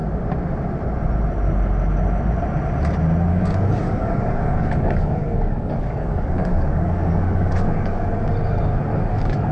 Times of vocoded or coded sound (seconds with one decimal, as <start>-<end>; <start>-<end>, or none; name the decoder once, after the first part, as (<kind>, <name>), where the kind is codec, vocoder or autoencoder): 3.3-8.1 (codec, DAC); 8.9-9.5